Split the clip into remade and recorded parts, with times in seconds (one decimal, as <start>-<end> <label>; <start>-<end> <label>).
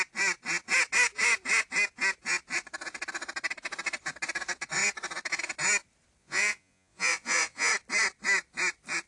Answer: 0.0-6.2 recorded; 6.2-7.7 remade; 7.7-9.1 recorded